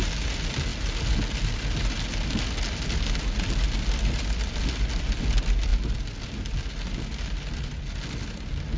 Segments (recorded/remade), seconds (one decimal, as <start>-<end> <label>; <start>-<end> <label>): 0.0-8.8 recorded